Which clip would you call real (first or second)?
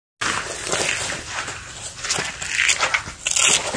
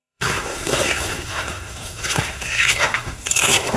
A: first